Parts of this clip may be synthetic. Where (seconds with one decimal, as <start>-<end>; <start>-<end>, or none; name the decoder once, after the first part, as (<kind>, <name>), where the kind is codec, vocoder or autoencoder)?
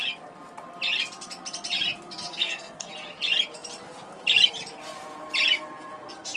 2.3-2.9 (codec, SNAC)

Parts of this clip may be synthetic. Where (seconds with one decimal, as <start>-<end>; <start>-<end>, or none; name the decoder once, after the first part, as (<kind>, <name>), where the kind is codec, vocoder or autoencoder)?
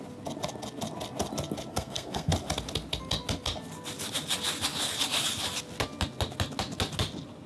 1.7-2.3 (codec, SNAC)